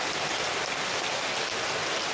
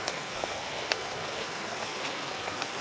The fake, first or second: second